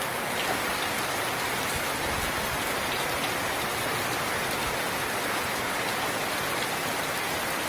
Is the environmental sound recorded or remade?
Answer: recorded